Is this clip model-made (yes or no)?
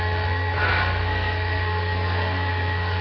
yes